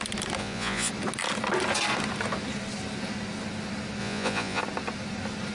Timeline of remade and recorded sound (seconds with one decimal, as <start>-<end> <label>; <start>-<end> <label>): 0.0-0.4 recorded; 0.4-0.9 remade; 0.9-4.0 recorded; 4.0-4.6 remade; 4.6-5.5 recorded